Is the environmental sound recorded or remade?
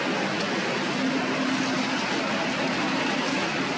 recorded